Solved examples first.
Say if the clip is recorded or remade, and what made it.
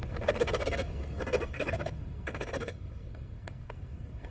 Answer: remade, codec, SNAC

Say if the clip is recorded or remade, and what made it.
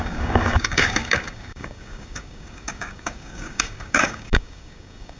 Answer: remade, codec, DAC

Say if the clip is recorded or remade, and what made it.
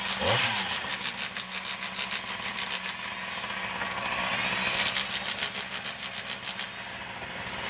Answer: recorded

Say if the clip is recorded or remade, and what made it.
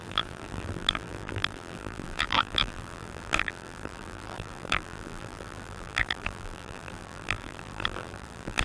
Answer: remade, vocoder, BigVGAN v2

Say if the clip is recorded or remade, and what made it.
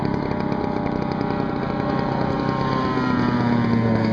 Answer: recorded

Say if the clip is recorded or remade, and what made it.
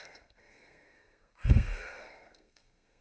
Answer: remade, codec, SNAC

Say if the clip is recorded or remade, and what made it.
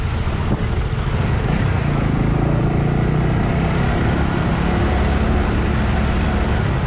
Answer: recorded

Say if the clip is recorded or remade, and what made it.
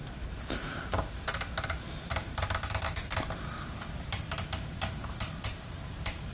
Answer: remade, vocoder, BigVGAN v2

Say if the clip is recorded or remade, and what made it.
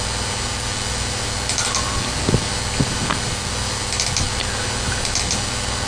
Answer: recorded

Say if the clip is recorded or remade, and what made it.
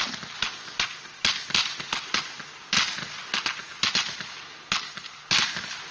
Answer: recorded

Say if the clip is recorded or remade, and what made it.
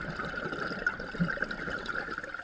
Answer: recorded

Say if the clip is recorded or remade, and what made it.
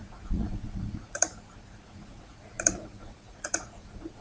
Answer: remade, vocoder, Vocos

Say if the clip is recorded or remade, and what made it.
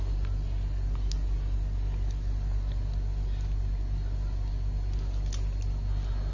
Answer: recorded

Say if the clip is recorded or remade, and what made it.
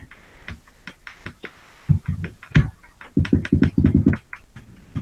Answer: recorded